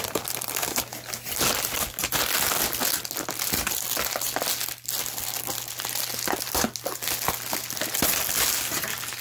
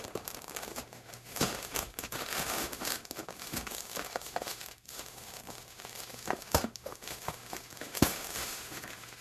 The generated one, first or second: second